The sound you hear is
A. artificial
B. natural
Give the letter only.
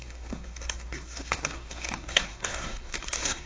A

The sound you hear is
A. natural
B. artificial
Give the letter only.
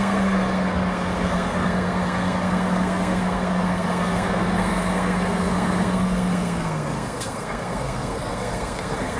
B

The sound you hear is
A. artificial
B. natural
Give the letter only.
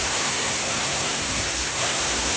A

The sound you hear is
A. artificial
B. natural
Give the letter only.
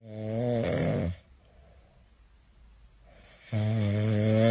B